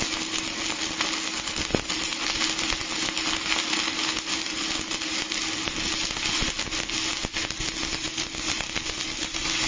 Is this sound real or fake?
real